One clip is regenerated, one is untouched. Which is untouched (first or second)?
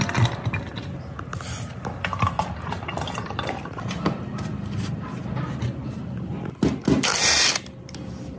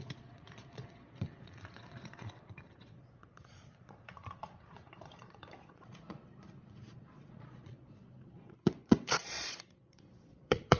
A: first